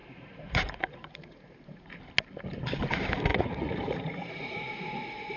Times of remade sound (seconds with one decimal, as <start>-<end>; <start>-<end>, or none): 0.0-2.0; 3.3-5.4